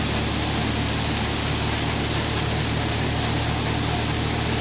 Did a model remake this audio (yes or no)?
no